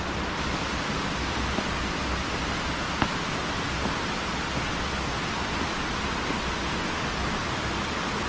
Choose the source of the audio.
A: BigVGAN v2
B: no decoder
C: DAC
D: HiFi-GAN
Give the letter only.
B